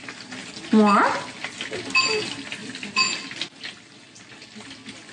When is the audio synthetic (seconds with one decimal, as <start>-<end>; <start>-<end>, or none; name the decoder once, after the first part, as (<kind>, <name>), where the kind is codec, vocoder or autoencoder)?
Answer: none